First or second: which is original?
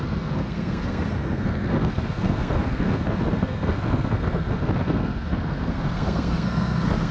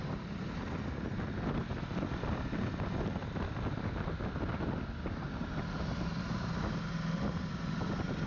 second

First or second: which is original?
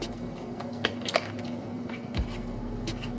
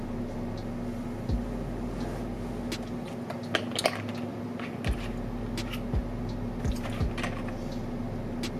second